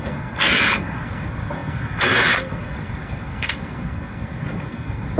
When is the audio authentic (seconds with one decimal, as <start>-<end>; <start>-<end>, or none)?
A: none